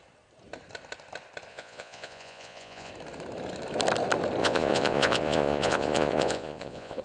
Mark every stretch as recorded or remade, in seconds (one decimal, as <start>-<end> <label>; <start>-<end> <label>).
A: 0.0-1.5 recorded; 1.5-2.9 remade; 2.9-4.4 recorded; 4.4-7.0 remade

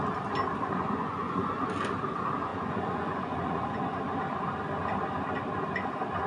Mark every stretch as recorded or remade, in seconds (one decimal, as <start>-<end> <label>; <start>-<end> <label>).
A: 0.0-0.6 recorded; 0.6-1.6 remade; 1.6-2.5 recorded; 2.5-4.0 remade; 4.0-6.3 recorded

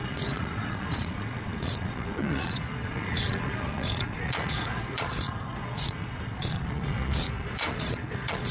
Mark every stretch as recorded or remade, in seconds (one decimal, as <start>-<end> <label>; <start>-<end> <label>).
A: 0.0-8.5 remade